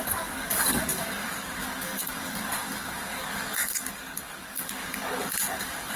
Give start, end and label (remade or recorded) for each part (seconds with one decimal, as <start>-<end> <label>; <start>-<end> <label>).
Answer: 0.0-6.0 remade